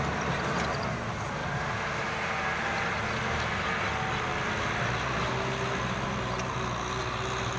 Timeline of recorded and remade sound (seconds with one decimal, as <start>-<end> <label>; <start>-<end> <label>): 0.0-1.4 recorded; 1.4-2.1 remade; 2.1-7.6 recorded